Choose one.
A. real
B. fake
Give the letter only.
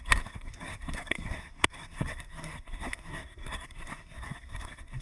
B